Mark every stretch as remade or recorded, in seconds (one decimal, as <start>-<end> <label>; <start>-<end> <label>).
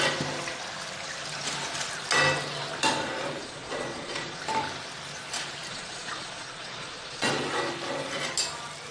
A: 0.0-3.4 recorded; 3.4-4.4 remade; 4.4-5.7 recorded; 5.7-7.3 remade; 7.3-8.9 recorded